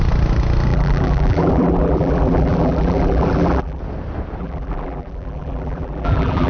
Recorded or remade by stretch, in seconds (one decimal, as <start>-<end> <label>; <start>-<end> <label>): 0.0-0.7 recorded; 0.7-3.8 remade; 3.8-4.4 recorded; 4.4-6.5 remade